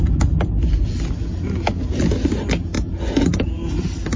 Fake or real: real